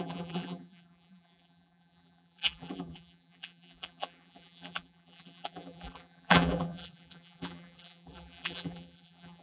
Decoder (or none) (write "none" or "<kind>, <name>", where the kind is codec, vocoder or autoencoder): vocoder, BigVGAN v2